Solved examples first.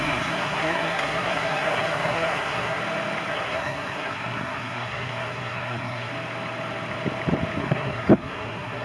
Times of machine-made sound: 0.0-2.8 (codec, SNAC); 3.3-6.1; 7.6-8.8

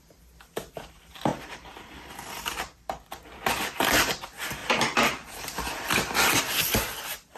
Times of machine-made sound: 1.3-2.6 (vocoder, BigVGAN v2); 4.6-6.4

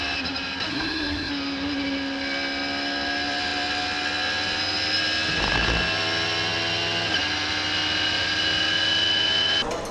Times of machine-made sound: 0.7-1.3 (codec, SNAC)

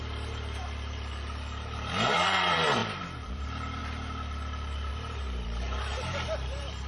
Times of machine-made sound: 0.0-3.8 (vocoder, BigVGAN v2); 4.9-6.9

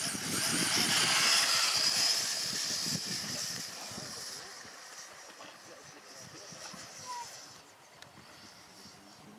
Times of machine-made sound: none

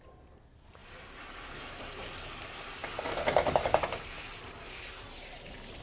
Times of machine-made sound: none

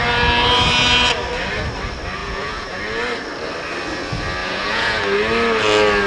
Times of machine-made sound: 2.2-2.8 (vocoder, Vocos); 4.4-5.0

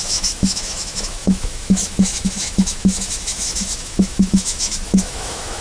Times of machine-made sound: 0.0-5.6 (autoencoder, DAC-VAE)